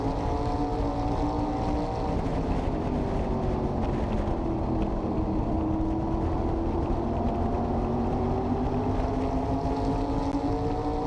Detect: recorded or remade recorded